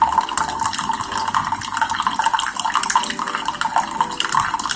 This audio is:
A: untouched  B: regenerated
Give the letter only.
A